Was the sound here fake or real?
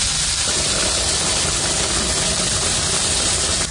real